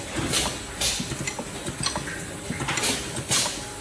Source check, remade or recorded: recorded